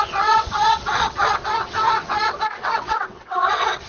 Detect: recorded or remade remade